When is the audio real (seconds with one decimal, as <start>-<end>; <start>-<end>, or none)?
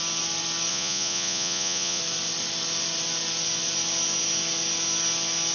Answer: 0.0-0.7; 2.0-5.5